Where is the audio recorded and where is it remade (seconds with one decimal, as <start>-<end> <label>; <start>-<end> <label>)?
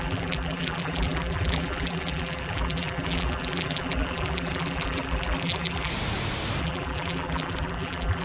0.0-5.9 remade; 5.9-6.6 recorded; 6.6-8.2 remade